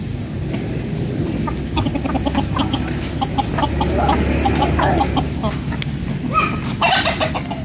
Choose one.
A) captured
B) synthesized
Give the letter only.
A